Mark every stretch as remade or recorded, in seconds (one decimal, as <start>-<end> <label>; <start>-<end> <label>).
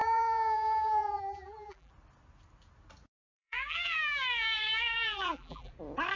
0.0-1.9 remade; 1.9-3.2 recorded; 3.2-5.7 remade; 5.7-6.2 recorded